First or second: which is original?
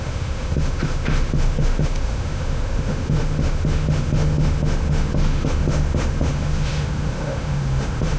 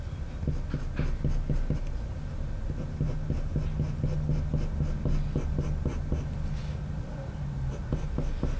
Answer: second